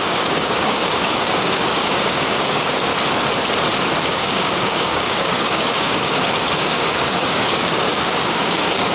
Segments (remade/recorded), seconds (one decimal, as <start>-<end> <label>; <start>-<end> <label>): 0.0-2.9 remade; 2.9-4.0 recorded; 4.0-8.9 remade